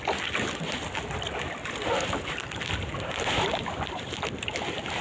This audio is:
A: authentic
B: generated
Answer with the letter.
A